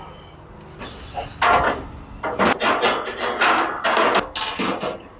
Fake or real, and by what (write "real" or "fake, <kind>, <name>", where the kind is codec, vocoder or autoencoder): real